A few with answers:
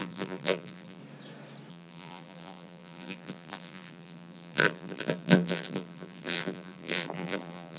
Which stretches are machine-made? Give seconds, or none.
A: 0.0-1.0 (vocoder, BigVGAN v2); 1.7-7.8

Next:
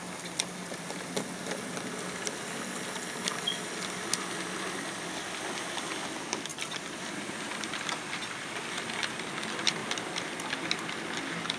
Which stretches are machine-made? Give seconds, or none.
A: none

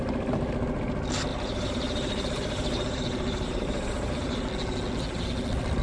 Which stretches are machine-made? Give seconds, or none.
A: 1.3-4.5 (vocoder, BigVGAN v2)

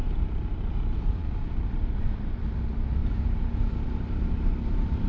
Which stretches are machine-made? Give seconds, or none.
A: 0.0-2.4 (vocoder, BigVGAN v2); 3.0-3.6

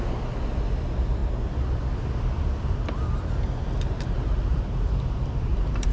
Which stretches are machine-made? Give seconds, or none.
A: 4.5-5.9 (vocoder, BigVGAN v2)